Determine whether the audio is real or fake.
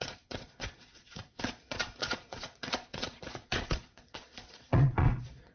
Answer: fake